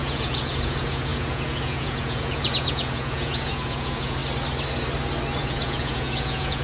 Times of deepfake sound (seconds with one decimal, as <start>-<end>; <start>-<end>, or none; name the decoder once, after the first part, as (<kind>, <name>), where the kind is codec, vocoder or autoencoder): 0.0-4.2 (vocoder, Vocos); 5.4-6.6